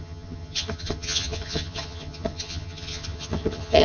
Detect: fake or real fake